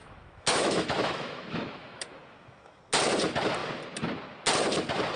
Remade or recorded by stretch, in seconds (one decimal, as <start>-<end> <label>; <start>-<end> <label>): 0.0-2.8 remade; 2.8-5.2 recorded